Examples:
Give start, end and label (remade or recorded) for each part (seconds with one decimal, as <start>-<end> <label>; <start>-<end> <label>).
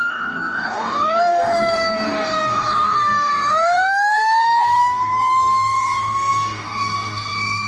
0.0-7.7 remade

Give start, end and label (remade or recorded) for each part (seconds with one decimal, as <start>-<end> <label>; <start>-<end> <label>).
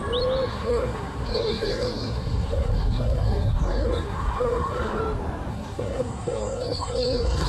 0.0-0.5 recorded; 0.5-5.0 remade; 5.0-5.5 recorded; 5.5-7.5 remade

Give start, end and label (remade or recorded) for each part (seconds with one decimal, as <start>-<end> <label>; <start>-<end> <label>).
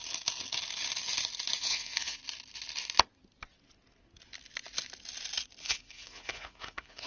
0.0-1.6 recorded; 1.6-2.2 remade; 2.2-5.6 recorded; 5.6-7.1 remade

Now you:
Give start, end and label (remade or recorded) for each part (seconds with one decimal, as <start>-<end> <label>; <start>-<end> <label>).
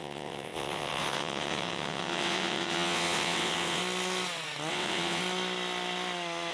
0.0-3.8 remade; 3.8-4.7 recorded; 4.7-5.2 remade; 5.2-6.5 recorded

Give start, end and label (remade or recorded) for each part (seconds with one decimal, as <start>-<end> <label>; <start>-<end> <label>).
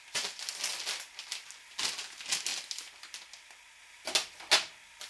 0.0-5.1 recorded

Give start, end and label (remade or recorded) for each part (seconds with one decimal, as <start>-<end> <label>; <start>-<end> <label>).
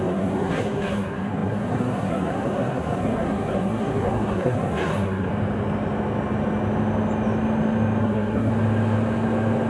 0.0-5.3 remade; 5.3-8.0 recorded; 8.0-8.5 remade; 8.5-9.7 recorded